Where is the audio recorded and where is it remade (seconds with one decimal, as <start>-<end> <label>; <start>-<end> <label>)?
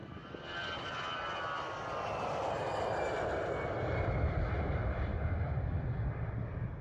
0.0-4.8 recorded; 4.8-5.5 remade; 5.5-6.8 recorded